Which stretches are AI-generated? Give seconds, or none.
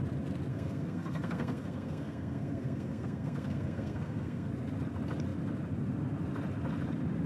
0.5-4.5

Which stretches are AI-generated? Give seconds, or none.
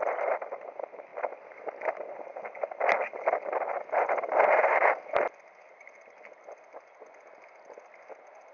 none